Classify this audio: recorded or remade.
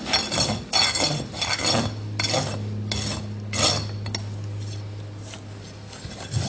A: recorded